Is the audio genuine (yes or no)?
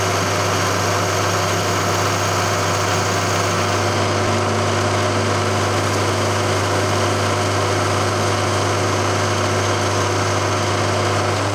yes